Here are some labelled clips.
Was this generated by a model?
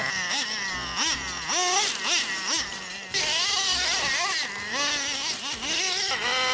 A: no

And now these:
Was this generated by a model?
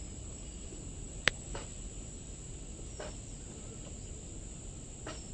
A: no